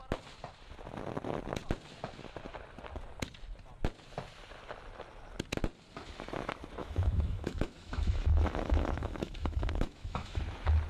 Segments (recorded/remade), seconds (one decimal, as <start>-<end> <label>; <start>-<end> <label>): 0.0-6.8 recorded; 6.8-10.4 remade; 10.4-10.9 recorded